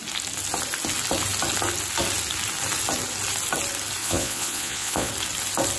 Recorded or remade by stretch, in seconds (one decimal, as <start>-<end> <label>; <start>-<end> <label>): 0.0-4.0 recorded; 4.0-5.1 remade; 5.1-5.8 recorded

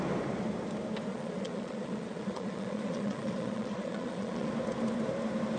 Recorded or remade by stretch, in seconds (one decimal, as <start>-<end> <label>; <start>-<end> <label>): 0.0-1.1 recorded; 1.1-4.5 remade; 4.5-5.6 recorded

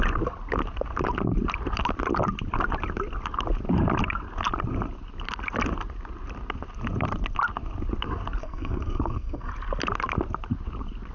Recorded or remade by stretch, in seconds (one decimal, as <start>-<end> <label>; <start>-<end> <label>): 0.0-8.4 recorded; 8.4-9.5 remade; 9.5-11.1 recorded

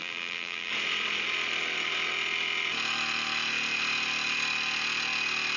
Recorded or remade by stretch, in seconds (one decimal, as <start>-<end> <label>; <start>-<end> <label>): 0.0-0.7 remade; 0.7-5.6 recorded

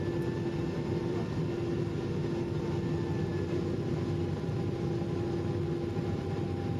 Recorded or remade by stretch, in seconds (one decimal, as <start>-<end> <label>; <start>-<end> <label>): 0.0-1.0 recorded; 1.0-1.5 remade; 1.5-6.8 recorded

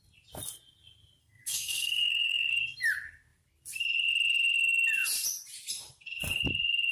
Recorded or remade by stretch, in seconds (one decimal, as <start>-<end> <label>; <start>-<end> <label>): 0.0-1.2 recorded; 1.2-2.5 remade; 2.5-6.9 recorded

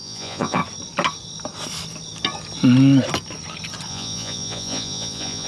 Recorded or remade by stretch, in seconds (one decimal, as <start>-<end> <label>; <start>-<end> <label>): 0.0-0.6 remade; 0.6-3.9 recorded; 3.9-5.5 remade

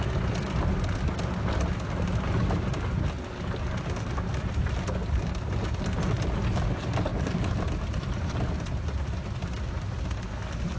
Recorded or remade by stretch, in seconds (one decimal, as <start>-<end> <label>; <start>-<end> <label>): 0.0-7.1 recorded; 7.1-8.5 remade; 8.5-10.8 recorded